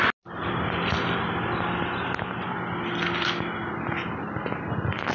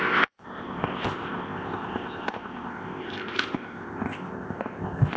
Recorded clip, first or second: first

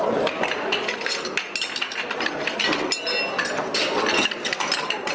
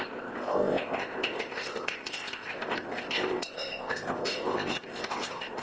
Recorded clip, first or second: first